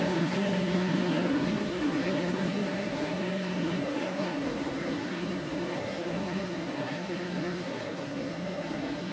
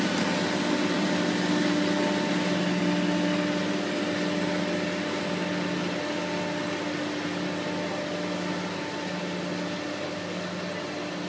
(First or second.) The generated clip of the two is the first